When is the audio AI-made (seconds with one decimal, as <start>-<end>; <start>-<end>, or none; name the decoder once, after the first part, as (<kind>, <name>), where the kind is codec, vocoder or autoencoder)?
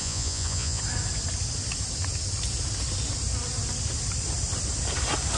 0.0-0.8 (vocoder, Vocos)